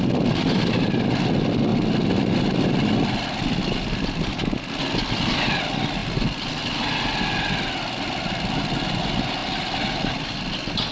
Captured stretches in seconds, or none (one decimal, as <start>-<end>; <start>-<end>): 0.0-10.9